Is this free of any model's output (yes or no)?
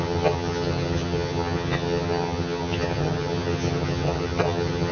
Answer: no